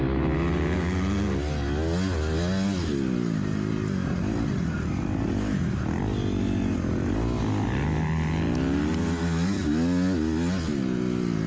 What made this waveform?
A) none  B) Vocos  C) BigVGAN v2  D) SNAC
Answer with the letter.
A